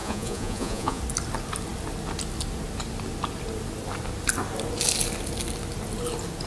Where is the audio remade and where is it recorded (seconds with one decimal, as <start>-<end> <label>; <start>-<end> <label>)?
0.0-1.0 remade; 1.0-6.5 recorded